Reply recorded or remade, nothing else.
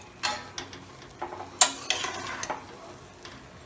recorded